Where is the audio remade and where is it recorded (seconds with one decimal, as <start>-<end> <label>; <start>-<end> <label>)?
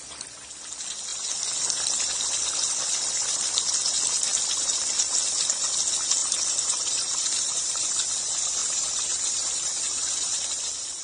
0.0-6.2 recorded; 6.2-7.8 remade; 7.8-8.6 recorded; 8.6-10.5 remade; 10.5-11.0 recorded